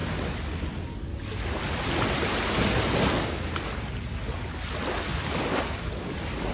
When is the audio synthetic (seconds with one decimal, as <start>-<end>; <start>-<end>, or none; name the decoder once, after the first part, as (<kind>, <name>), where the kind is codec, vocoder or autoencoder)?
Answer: none